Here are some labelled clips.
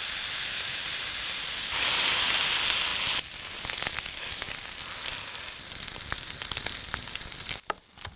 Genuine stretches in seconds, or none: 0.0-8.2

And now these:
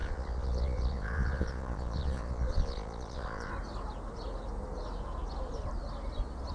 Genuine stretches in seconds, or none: 3.5-6.5

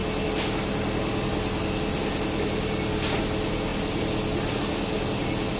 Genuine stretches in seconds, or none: 0.0-5.6

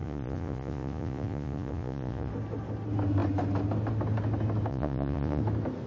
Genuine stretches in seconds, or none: 2.3-4.7; 5.4-5.9

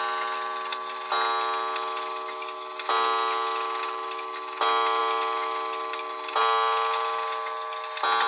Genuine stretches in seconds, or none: 0.0-8.3